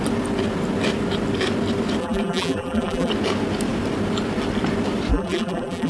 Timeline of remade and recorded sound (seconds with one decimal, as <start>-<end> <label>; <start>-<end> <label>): 0.0-2.0 recorded; 2.0-3.1 remade; 3.1-5.1 recorded; 5.1-5.9 remade